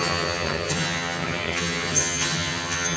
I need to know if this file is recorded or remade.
remade